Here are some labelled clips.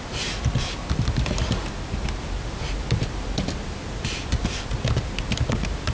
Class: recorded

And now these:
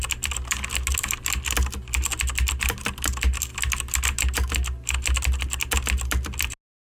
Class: recorded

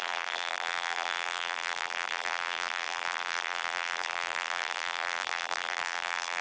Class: remade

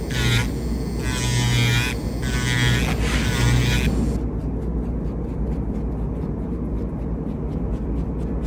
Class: recorded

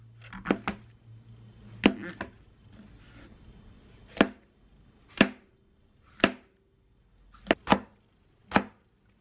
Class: recorded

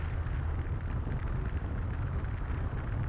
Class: recorded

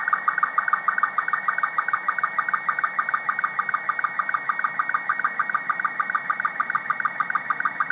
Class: recorded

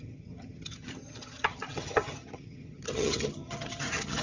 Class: remade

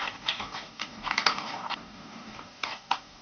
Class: remade